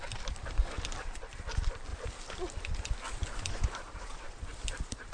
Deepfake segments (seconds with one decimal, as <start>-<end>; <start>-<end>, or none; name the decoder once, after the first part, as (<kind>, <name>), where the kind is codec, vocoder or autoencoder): 0.0-1.9 (vocoder, BigVGAN v2)